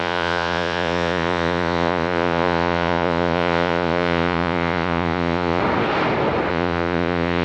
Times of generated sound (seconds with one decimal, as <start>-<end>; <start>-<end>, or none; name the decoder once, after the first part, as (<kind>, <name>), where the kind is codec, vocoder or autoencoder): 0.0-5.6 (vocoder, Vocos); 6.5-7.4